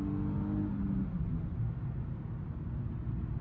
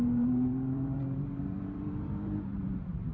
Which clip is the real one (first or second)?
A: first